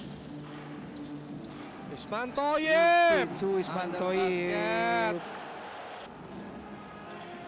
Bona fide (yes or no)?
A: yes